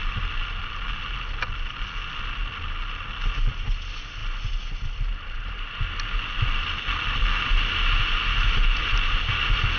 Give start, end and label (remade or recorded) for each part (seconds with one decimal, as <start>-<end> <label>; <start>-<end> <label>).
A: 0.0-9.8 recorded

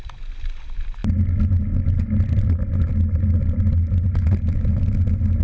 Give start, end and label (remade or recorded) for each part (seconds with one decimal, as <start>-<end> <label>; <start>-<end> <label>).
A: 0.0-5.4 recorded